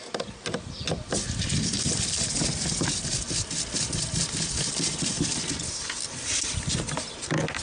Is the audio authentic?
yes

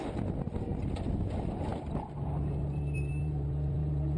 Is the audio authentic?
yes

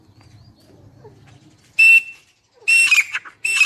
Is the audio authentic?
yes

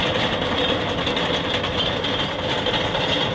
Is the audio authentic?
yes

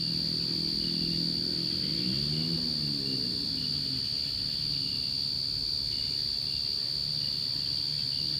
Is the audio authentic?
yes